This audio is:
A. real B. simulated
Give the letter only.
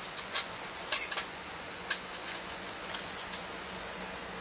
B